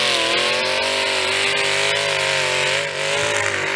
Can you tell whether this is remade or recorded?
recorded